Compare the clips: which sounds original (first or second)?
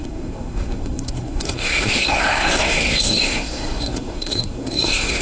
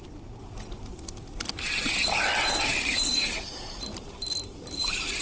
second